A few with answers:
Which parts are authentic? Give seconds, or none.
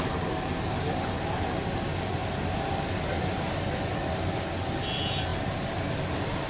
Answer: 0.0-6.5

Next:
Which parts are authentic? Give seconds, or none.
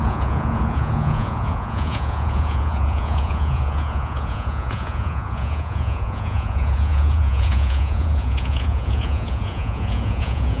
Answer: none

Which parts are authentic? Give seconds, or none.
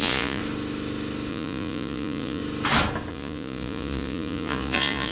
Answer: 0.4-1.3; 2.4-3.1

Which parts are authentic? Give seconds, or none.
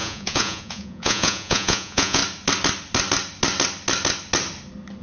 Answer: 2.2-5.0